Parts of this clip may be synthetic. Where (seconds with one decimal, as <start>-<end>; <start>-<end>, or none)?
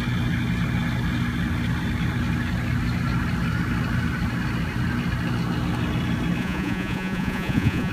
6.4-7.9